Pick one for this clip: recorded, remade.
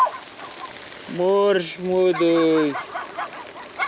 recorded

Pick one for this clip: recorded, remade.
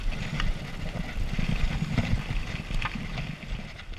recorded